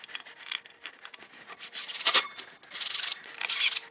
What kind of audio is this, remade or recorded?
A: recorded